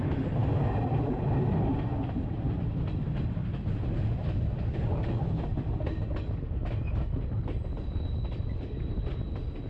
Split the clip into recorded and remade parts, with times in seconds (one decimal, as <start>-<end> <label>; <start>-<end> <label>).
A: 0.0-9.7 recorded